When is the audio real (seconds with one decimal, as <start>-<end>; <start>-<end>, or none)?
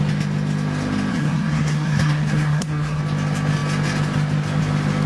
0.0-1.1; 3.0-5.1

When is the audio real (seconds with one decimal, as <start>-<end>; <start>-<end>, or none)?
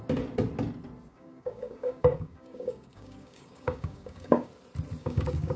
0.0-1.1; 4.5-5.0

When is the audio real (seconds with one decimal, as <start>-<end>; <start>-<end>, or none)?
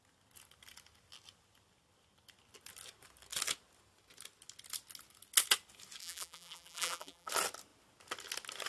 0.0-6.0; 7.3-8.7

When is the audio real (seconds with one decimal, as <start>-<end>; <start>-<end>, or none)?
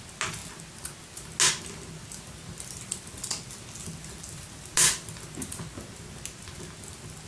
0.0-7.3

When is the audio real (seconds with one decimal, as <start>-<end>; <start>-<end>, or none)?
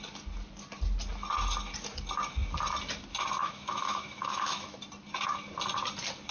0.0-3.4; 4.8-6.3